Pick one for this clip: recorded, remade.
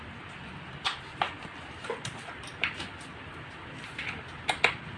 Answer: recorded